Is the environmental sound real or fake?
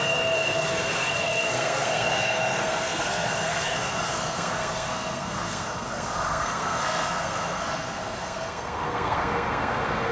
fake